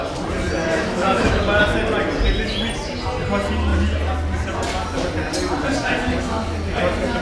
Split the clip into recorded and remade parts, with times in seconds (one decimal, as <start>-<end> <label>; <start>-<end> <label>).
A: 0.0-0.6 recorded; 0.6-1.4 remade; 1.4-7.2 recorded